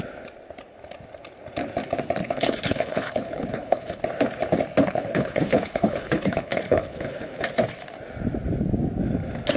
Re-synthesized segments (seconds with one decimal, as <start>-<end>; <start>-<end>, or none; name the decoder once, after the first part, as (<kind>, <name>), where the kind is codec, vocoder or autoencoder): 2.2-4.0 (codec, HILCodec); 4.8-7.4